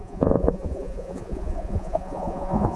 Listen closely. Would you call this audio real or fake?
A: fake